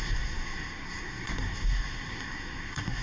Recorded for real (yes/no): no